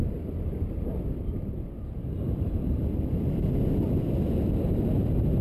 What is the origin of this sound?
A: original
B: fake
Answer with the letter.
A